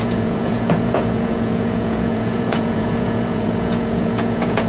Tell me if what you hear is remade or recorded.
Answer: remade